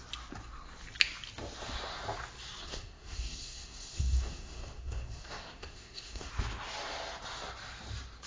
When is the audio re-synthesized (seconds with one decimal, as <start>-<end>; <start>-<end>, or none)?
2.6-6.3